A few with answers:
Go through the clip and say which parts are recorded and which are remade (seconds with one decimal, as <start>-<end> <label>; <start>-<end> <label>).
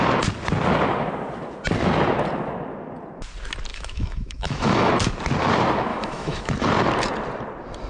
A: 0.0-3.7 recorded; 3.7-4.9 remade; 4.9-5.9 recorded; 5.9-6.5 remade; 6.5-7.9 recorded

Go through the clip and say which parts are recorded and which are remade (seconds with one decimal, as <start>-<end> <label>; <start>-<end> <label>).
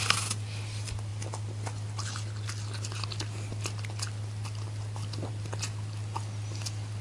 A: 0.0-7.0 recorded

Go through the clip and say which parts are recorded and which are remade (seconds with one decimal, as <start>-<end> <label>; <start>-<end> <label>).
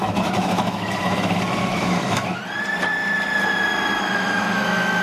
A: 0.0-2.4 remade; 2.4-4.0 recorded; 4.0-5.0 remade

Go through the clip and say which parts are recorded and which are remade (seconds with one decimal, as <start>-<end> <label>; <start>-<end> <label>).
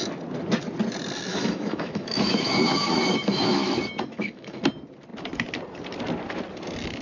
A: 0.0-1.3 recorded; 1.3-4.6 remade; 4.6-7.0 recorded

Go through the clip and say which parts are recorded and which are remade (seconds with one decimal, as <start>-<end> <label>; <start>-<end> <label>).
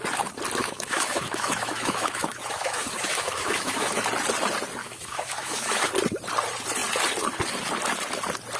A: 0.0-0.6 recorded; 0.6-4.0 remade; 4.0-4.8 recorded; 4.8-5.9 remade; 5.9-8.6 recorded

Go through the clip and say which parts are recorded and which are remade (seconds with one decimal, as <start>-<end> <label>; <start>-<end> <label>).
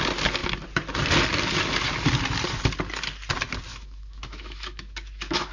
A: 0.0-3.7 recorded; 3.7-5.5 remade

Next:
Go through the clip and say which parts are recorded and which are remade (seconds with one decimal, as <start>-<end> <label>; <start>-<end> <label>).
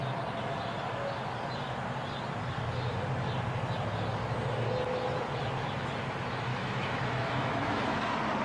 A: 0.0-6.5 recorded; 6.5-8.0 remade; 8.0-8.4 recorded